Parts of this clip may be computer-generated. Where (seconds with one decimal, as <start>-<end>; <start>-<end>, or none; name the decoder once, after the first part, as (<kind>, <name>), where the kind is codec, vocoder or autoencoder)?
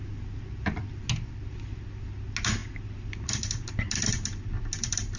none